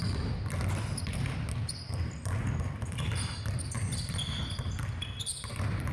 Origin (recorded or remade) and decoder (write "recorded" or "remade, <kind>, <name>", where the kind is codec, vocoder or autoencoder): recorded